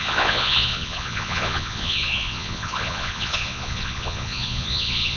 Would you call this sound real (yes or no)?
no